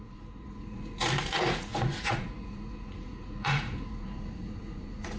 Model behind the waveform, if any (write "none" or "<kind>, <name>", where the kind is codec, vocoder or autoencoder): vocoder, Vocos